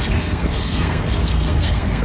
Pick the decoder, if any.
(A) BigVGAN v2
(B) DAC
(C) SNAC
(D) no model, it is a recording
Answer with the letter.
C